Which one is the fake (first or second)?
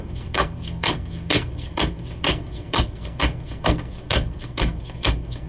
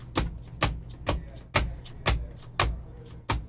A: first